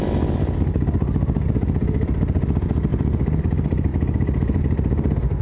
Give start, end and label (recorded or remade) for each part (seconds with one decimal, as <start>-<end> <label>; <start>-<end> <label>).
0.0-5.4 recorded